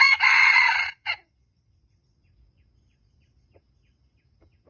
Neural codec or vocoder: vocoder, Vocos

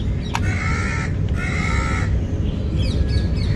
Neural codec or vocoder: none